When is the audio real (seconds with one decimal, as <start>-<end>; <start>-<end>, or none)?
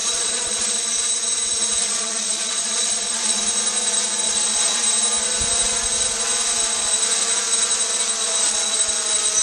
0.7-1.8; 3.4-4.2; 4.8-8.2; 8.8-9.4